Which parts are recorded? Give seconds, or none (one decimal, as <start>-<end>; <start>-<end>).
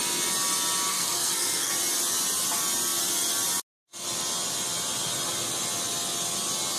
0.0-0.9; 1.7-6.8